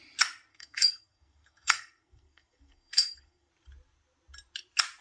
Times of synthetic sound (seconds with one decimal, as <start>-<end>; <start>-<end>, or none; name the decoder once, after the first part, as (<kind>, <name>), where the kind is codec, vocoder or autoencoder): 0.5-3.5 (codec, SNAC)